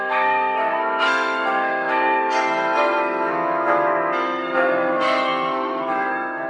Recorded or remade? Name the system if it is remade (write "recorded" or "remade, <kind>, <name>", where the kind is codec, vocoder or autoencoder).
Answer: remade, codec, SNAC